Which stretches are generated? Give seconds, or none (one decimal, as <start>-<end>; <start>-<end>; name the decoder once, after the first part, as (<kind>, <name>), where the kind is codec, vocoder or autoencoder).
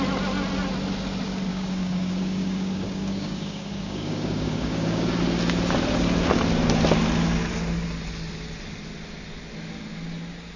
1.5-5.2 (codec, DAC)